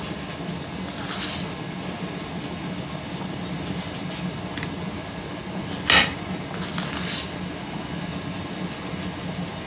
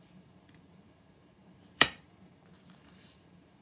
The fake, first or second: second